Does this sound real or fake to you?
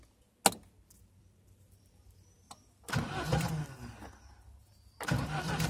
real